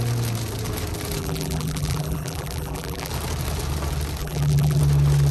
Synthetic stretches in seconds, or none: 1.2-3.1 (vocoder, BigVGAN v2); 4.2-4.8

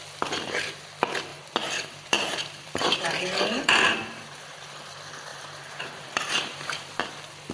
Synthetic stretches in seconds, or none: 1.3-4.7 (vocoder, BigVGAN v2); 5.3-7.1

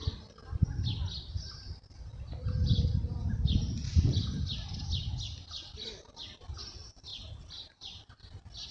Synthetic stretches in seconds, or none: none

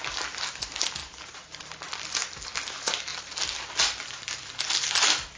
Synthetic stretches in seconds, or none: 1.0-1.6 (vocoder, BigVGAN v2)

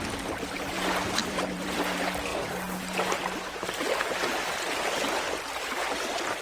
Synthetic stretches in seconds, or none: 1.2-1.8 (vocoder, BigVGAN v2)